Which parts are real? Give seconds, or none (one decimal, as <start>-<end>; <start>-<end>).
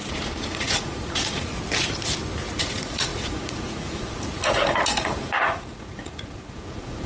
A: 1.5-2.6